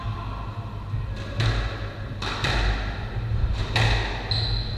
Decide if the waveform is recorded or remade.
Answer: recorded